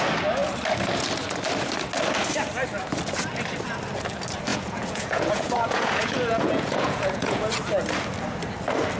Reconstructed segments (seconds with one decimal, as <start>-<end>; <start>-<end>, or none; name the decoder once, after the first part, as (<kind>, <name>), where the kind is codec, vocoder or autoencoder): 4.5-7.5 (vocoder, Vocos)